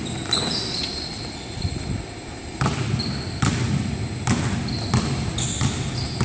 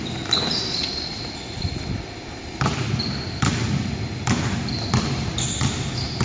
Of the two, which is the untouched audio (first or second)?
first